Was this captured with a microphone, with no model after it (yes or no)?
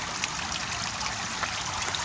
yes